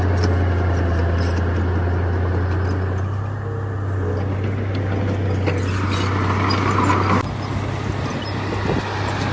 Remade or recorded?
recorded